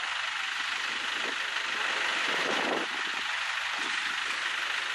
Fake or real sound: real